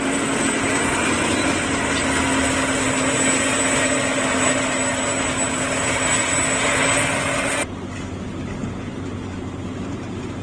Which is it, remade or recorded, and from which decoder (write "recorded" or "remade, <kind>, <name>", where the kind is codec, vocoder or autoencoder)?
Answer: recorded